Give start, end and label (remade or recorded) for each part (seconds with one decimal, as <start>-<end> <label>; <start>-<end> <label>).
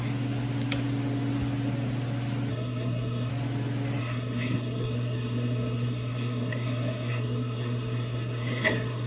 0.0-2.5 recorded; 2.5-3.3 remade; 3.3-4.0 recorded; 4.0-9.1 remade